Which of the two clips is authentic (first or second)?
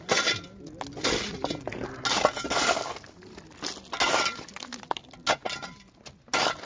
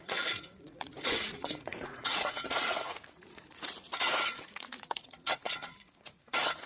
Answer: first